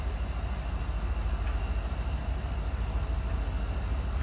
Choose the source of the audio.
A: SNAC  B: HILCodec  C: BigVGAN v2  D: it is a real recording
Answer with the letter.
D